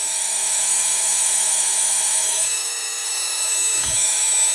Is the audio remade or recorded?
remade